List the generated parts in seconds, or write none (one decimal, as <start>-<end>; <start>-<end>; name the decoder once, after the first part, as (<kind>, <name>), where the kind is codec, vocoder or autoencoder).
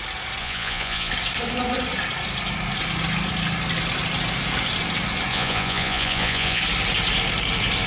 0.4-1.1 (vocoder, Vocos); 5.3-6.6